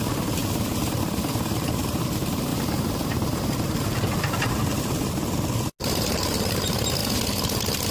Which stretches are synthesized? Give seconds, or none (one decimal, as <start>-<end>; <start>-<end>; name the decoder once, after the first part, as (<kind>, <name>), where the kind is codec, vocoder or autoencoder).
2.5-4.8 (vocoder, BigVGAN v2)